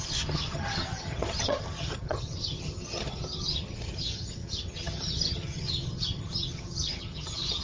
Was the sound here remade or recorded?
remade